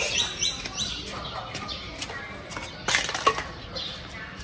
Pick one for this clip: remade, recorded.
recorded